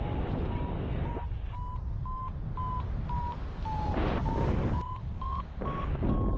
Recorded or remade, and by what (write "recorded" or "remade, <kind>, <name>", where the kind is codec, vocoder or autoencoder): recorded